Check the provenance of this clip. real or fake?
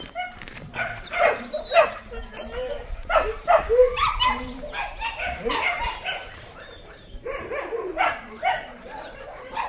fake